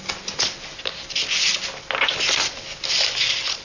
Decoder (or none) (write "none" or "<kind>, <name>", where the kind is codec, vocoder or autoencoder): none